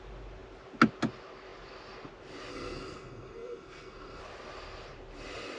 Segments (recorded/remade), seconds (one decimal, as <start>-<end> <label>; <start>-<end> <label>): 0.0-2.5 recorded; 2.5-4.2 remade; 4.2-5.6 recorded